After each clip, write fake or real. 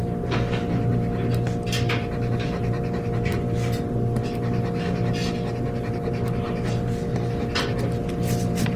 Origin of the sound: real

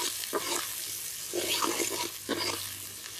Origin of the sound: real